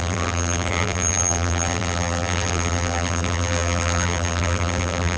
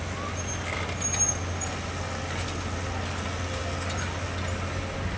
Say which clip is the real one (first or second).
second